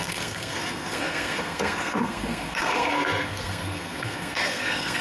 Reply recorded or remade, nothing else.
remade